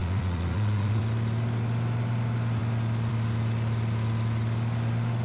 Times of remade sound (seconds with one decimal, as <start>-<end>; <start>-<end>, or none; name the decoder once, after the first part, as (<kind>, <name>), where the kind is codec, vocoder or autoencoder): 0.0-1.0 (vocoder, Vocos)